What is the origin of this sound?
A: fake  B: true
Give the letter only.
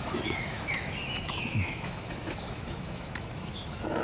A